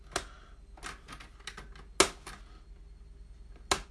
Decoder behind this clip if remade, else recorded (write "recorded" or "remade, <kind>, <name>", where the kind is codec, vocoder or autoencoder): recorded